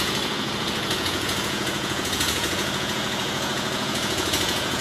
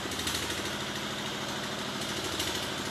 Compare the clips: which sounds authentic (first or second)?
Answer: second